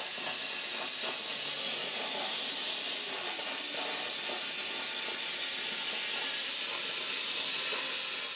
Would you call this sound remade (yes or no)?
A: no